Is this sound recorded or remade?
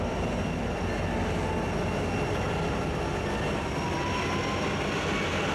recorded